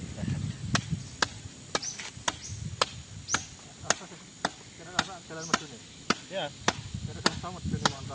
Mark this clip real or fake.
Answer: real